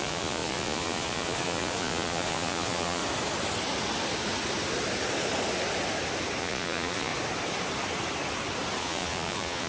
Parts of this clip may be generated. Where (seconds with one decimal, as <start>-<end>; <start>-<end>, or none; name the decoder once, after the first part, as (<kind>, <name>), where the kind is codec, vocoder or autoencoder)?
0.0-3.0 (vocoder, Vocos); 6.4-7.1; 8.8-9.7